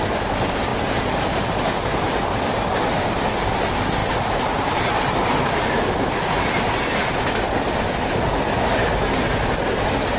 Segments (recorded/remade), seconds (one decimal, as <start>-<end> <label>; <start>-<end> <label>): 0.0-10.2 recorded